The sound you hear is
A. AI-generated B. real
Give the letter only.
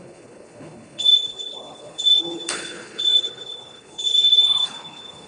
A